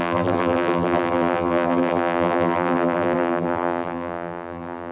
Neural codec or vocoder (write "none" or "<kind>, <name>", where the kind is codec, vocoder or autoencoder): vocoder, BigVGAN v2